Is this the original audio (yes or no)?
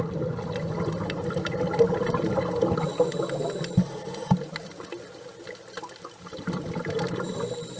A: yes